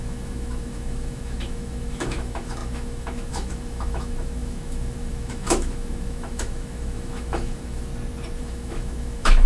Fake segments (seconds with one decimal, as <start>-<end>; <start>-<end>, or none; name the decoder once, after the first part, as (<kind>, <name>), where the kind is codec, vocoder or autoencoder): 0.0-7.9 (autoencoder, DAC-VAE); 8.4-9.5